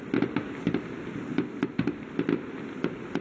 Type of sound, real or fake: real